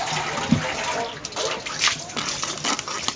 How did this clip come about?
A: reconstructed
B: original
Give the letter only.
B